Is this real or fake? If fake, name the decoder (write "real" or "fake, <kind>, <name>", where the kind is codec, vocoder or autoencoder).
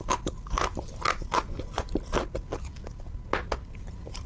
real